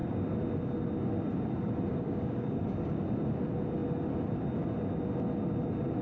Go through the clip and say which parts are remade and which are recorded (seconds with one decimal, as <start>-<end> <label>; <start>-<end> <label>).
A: 0.0-1.9 recorded; 1.9-3.0 remade; 3.0-6.0 recorded